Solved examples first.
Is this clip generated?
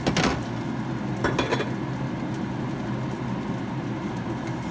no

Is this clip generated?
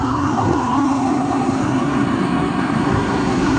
yes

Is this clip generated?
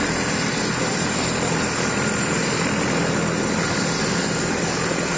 no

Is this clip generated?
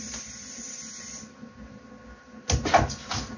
no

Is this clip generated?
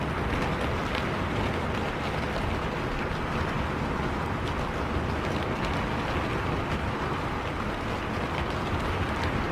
no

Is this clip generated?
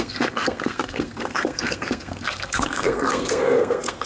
yes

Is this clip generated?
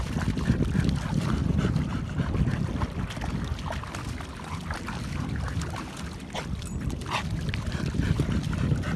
no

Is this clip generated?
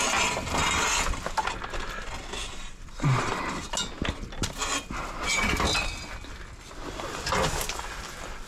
no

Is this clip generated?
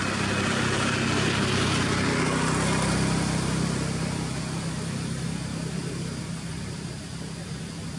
no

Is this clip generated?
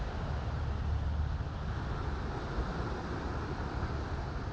no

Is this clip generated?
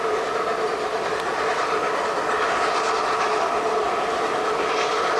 no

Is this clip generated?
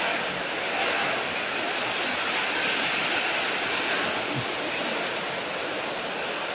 no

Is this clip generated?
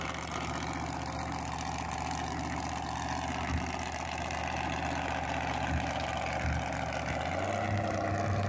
no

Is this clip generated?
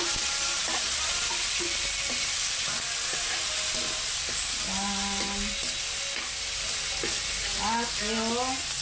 no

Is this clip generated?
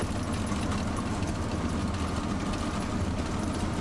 no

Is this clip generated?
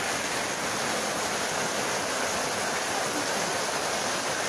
no